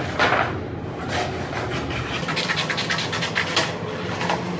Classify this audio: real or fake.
real